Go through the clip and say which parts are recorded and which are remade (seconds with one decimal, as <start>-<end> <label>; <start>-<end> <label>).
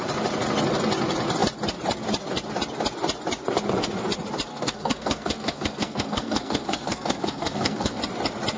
0.0-4.5 recorded; 4.5-8.0 remade; 8.0-8.6 recorded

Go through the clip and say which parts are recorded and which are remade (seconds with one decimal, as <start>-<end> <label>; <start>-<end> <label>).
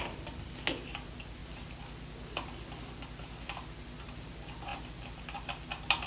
0.0-6.1 recorded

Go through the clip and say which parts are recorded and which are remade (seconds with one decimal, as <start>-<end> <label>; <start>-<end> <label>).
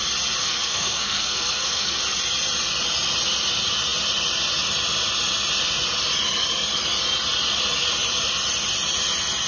0.0-0.4 recorded; 0.4-2.0 remade; 2.0-9.5 recorded